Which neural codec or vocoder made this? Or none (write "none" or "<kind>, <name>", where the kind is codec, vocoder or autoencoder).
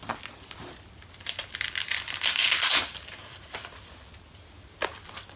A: none